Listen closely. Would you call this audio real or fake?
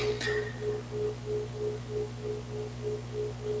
real